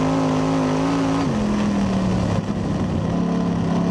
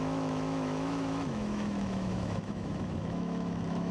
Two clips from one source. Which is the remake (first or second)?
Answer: second